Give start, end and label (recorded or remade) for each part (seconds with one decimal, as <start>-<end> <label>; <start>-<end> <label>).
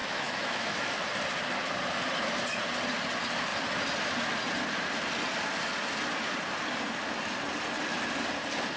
0.0-0.9 remade; 0.9-8.8 recorded